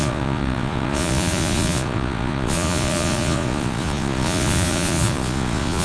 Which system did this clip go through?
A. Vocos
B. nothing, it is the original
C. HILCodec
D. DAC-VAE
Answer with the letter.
A